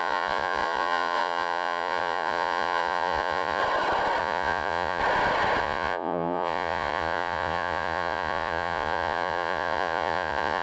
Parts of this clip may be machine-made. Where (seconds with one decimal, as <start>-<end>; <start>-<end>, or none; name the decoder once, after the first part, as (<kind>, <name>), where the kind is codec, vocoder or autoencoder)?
0.0-3.6 (vocoder, Vocos); 4.2-5.0; 5.6-10.6